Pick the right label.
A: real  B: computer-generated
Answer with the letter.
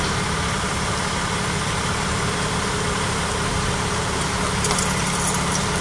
A